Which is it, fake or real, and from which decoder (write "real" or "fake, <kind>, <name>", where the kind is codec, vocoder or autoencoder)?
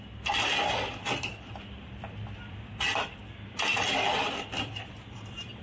fake, vocoder, BigVGAN v2